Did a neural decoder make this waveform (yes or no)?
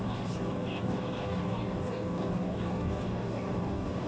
yes